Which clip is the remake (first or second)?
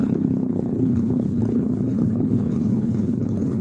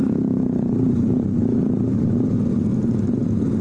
first